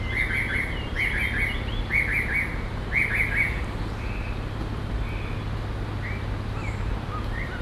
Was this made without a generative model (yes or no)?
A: yes